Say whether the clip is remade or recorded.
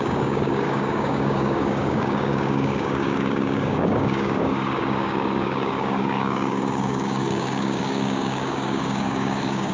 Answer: remade